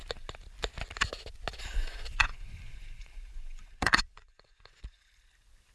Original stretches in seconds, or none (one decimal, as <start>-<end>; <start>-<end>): 0.0-1.7; 5.1-5.7